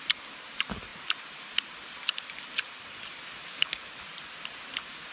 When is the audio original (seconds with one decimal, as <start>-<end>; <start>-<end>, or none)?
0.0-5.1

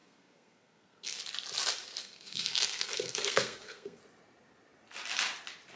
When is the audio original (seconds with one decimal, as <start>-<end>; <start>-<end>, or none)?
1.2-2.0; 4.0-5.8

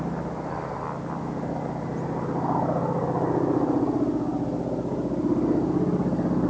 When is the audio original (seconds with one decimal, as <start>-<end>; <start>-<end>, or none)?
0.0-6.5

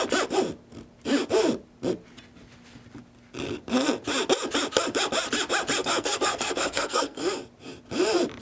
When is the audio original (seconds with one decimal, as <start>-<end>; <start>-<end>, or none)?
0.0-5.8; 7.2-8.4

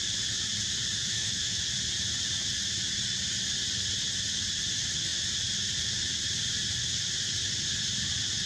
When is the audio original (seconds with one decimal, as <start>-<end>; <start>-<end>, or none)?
0.0-1.0; 1.6-8.5

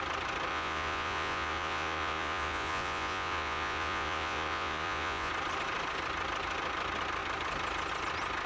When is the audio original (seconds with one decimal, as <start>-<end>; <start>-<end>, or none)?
0.0-0.5; 5.3-8.5